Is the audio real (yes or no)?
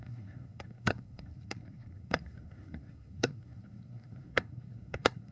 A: no